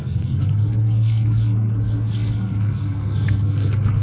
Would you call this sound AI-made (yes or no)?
yes